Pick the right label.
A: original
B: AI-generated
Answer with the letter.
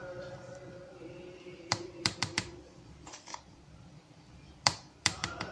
B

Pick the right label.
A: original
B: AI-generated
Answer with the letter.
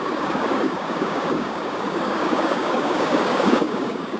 B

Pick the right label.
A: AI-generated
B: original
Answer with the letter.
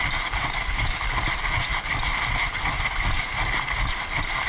B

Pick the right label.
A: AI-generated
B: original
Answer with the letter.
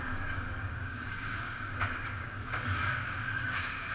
A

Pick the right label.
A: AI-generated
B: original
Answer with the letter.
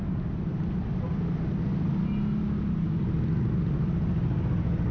B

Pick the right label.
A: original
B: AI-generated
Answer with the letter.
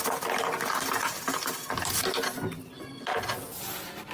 A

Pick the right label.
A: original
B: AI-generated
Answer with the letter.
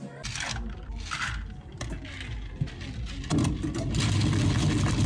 A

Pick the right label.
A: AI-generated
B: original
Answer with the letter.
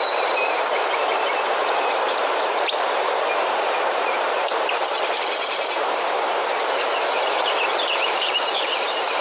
A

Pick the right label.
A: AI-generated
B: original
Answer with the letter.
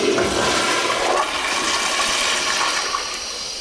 B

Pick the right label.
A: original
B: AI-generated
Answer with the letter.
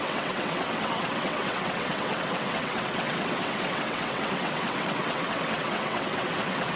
B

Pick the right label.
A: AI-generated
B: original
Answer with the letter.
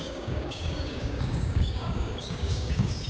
A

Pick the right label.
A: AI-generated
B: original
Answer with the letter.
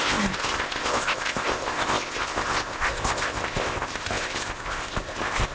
A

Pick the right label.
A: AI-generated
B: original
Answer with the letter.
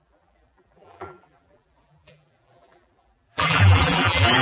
A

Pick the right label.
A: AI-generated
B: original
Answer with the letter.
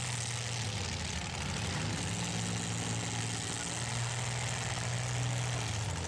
B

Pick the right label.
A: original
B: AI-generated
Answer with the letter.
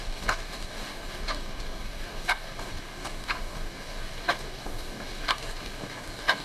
B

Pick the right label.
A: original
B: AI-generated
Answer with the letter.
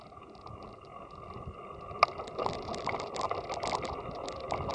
A